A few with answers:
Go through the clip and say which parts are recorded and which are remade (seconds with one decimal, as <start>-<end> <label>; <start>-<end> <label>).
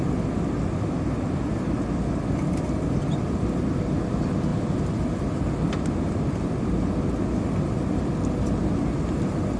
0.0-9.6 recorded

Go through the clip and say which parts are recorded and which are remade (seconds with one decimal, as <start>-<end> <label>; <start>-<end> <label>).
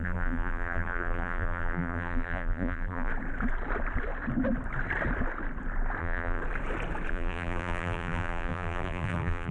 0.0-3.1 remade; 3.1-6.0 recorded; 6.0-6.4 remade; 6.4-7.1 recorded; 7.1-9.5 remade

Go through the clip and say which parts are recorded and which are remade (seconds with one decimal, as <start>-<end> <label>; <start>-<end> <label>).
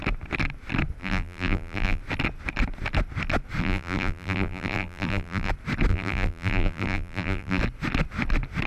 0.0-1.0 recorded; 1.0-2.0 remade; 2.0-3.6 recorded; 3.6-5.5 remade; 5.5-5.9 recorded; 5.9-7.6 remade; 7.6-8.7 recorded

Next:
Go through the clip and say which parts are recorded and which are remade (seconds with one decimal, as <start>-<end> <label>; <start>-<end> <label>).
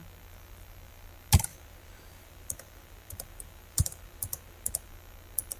0.0-1.5 recorded; 1.5-4.9 remade; 4.9-5.6 recorded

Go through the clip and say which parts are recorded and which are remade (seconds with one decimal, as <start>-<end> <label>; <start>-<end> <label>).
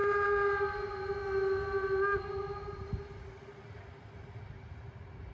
0.0-5.3 recorded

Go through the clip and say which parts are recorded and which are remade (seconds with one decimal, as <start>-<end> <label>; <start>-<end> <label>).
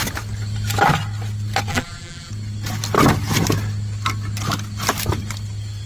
0.0-1.7 recorded; 1.7-2.3 remade; 2.3-5.9 recorded